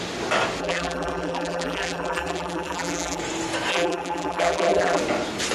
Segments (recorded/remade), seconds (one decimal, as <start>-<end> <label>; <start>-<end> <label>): 0.0-0.6 recorded; 0.6-3.2 remade; 3.2-3.7 recorded; 3.7-5.0 remade; 5.0-5.5 recorded